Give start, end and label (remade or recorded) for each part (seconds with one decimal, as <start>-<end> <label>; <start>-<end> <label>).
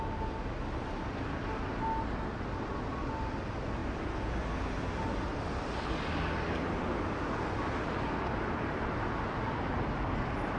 0.0-10.6 recorded